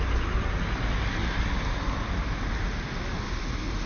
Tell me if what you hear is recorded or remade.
recorded